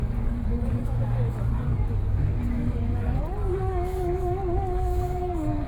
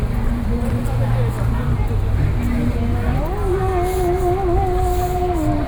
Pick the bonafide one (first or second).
second